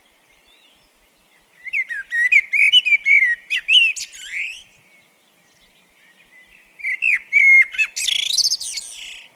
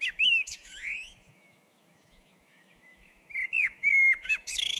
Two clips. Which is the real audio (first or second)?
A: first